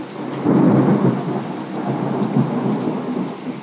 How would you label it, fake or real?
real